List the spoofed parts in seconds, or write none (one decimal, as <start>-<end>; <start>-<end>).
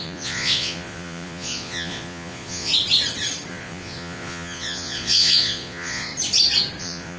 0.0-2.7; 3.5-6.1; 6.8-7.2